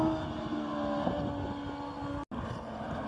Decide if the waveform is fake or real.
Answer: real